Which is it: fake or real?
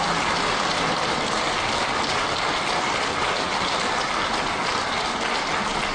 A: real